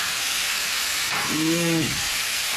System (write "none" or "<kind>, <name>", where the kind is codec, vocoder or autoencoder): codec, SNAC